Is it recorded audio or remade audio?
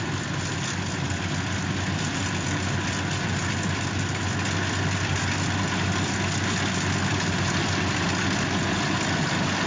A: recorded